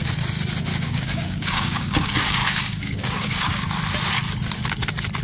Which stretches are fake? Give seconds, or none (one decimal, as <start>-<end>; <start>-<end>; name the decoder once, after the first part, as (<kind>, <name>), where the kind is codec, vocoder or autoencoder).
0.7-3.8 (codec, DAC)